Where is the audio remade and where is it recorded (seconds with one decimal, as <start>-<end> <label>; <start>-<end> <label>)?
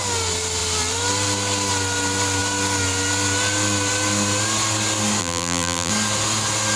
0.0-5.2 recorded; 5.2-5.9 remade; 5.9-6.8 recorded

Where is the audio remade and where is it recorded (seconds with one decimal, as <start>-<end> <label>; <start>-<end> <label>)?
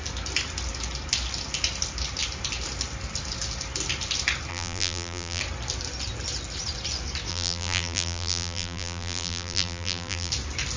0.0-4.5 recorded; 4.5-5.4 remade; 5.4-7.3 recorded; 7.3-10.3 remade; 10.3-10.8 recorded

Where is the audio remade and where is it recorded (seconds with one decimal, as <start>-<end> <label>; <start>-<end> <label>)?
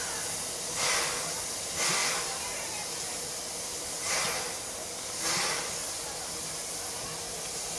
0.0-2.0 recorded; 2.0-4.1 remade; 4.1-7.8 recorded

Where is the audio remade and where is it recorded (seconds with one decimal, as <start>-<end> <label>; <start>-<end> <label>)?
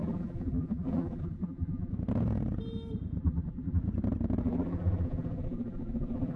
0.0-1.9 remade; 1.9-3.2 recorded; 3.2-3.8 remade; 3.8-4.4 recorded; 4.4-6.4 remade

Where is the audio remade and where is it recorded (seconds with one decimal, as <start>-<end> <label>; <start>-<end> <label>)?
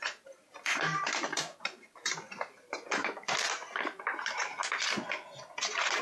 0.0-4.6 remade; 4.6-6.0 recorded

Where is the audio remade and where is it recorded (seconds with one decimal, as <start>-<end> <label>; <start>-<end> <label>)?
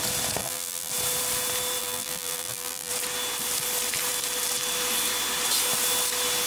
0.0-0.4 recorded; 0.4-0.9 remade; 0.9-1.8 recorded; 1.8-2.9 remade; 2.9-6.5 recorded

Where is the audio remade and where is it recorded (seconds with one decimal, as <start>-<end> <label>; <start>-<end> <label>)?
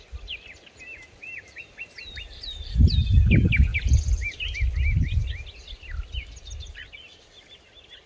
0.0-3.7 recorded; 3.7-4.6 remade; 4.6-8.1 recorded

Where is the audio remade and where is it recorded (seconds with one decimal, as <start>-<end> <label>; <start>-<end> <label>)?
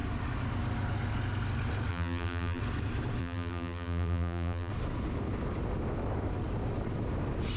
0.0-1.9 recorded; 1.9-2.6 remade; 2.6-3.2 recorded; 3.2-4.7 remade; 4.7-7.6 recorded